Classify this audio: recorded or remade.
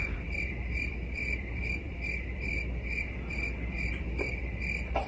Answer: remade